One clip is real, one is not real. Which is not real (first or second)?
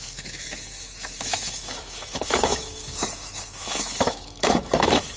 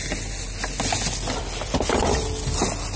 first